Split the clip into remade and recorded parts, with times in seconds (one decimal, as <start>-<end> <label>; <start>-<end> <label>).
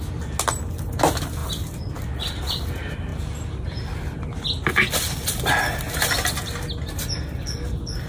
0.0-8.1 recorded